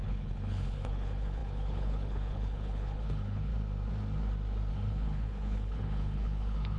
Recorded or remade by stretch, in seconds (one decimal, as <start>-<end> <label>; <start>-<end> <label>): 0.0-3.5 remade; 3.5-4.7 recorded; 4.7-6.8 remade